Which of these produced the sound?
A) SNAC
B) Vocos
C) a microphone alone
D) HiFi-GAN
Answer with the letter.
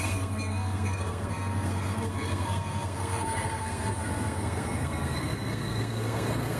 A